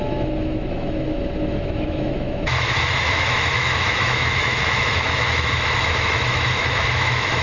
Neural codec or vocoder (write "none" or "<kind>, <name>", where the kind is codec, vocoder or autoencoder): autoencoder, DAC-VAE